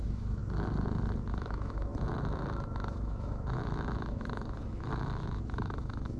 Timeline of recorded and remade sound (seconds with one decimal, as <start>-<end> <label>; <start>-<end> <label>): 0.0-0.4 remade; 0.4-1.3 recorded; 1.3-6.2 remade